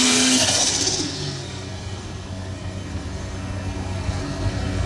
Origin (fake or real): fake